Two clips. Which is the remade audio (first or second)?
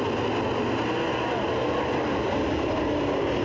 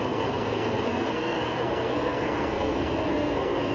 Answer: second